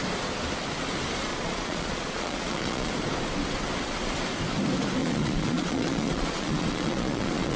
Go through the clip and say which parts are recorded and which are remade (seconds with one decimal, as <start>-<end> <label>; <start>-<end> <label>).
0.0-1.3 recorded; 1.3-2.9 remade; 2.9-5.0 recorded; 5.0-7.6 remade